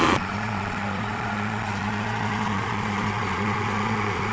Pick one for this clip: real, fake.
fake